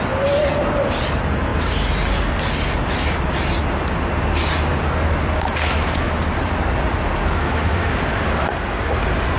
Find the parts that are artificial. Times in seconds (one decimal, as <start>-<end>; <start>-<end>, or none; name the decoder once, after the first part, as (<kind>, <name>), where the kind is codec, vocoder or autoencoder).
7.4-7.9 (autoencoder, DAC-VAE)